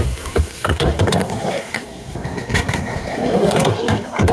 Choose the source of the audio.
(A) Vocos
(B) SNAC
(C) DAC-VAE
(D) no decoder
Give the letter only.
B